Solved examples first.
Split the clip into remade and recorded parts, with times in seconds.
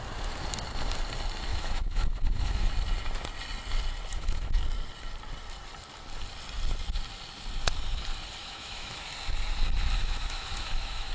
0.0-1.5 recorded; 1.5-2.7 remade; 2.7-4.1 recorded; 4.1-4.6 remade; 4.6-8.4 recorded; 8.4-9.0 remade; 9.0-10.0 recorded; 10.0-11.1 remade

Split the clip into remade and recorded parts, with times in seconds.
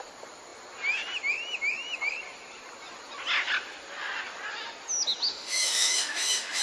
0.0-5.3 recorded; 5.3-6.6 remade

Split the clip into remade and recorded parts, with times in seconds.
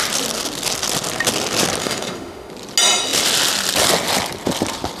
0.0-1.8 recorded; 1.8-2.5 remade; 2.5-5.0 recorded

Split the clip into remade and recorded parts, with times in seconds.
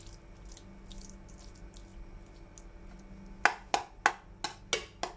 0.0-5.2 recorded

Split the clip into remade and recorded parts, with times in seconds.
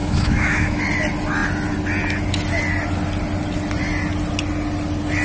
0.0-0.8 remade; 0.8-5.2 recorded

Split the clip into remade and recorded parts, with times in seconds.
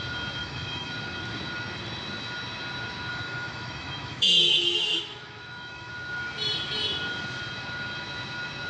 0.0-0.4 recorded; 0.4-0.9 remade; 0.9-3.1 recorded; 3.1-5.9 remade; 5.9-8.7 recorded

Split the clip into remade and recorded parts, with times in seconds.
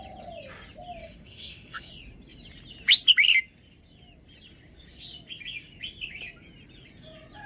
0.0-1.0 recorded; 1.0-1.9 remade; 1.9-7.5 recorded